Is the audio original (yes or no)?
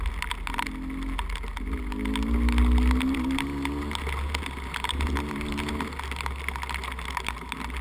yes